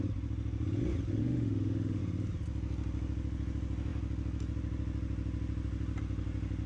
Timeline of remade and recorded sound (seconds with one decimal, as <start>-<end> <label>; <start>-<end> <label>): 0.0-1.2 recorded; 1.2-2.0 remade; 2.0-6.7 recorded